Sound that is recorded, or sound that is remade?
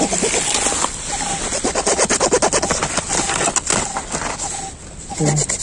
recorded